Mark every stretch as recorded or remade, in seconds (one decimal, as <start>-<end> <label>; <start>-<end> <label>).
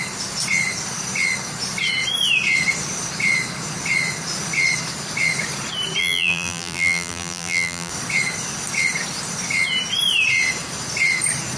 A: 0.0-6.0 recorded; 6.0-7.9 remade; 7.9-11.6 recorded